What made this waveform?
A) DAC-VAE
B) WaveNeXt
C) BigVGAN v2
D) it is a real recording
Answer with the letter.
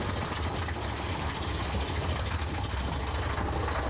D